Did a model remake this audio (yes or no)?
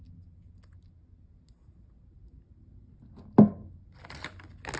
no